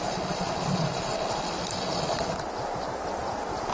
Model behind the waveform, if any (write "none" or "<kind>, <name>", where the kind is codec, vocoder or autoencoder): none